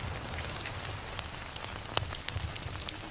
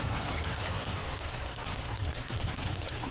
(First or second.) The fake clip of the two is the second